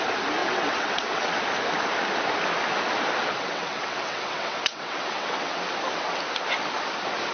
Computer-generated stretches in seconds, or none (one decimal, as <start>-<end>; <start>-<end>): 0.4-1.4; 3.2-5.6